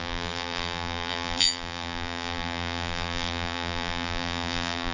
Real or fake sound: fake